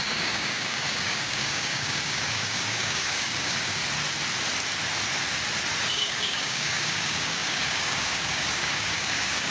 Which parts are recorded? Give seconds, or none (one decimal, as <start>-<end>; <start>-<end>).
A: 3.8-5.9

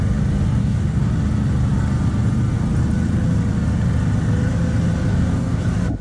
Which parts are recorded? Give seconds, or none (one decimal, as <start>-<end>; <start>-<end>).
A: 0.0-0.6; 1.1-5.1; 5.6-6.0

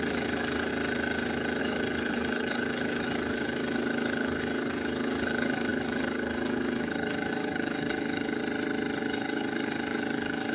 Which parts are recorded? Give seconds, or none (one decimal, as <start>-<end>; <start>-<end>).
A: 0.7-1.6; 8.4-9.0

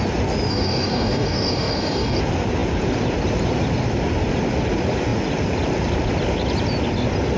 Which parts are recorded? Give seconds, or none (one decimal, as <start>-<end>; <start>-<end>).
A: 0.0-0.5; 2.2-7.4